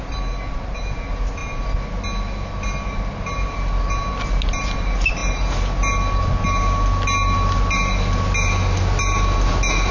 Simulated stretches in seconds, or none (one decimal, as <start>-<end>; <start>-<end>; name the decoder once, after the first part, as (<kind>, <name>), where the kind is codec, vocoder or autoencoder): none